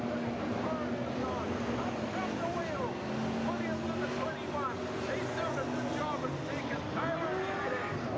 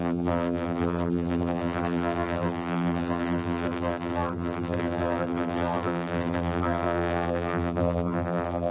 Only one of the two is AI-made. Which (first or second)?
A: second